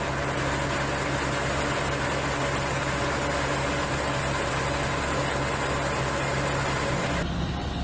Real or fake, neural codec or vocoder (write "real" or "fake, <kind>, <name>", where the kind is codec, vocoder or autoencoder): real